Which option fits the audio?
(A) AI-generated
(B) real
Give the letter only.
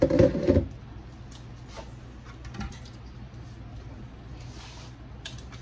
B